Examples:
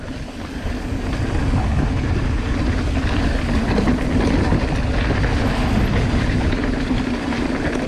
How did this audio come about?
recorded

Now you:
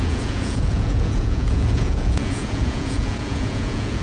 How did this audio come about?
remade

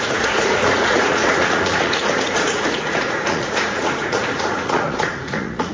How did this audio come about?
remade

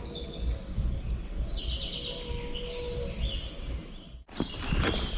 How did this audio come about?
recorded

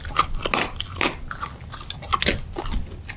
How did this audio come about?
recorded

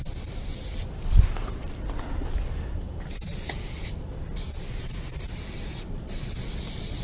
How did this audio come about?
remade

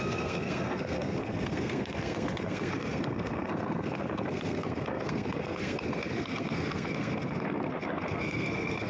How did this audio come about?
remade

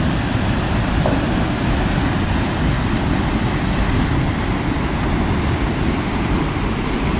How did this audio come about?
recorded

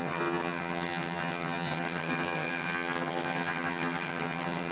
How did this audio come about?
remade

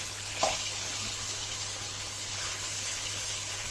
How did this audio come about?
remade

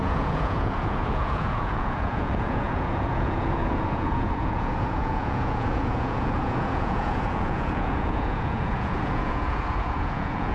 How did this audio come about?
remade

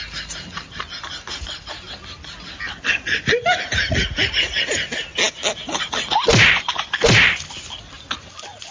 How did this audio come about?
recorded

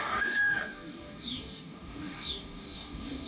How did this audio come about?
remade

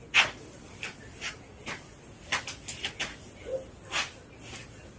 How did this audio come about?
recorded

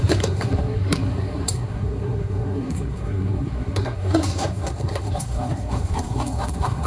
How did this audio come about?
remade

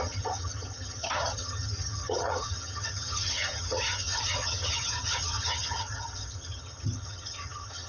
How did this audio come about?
remade